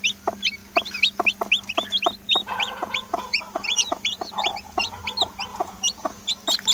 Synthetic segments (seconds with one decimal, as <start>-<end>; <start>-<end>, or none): 2.4-5.0; 5.5-6.3